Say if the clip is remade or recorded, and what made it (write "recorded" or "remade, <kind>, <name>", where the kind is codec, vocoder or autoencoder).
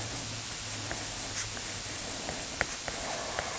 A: recorded